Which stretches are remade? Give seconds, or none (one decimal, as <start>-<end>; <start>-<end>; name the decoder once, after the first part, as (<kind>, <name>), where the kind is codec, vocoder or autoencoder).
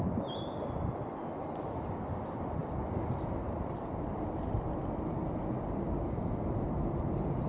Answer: none